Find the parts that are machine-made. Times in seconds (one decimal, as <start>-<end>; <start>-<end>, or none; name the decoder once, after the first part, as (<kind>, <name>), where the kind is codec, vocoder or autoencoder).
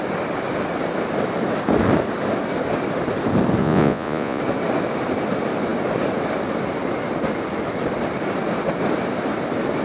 3.6-4.4 (vocoder, Vocos)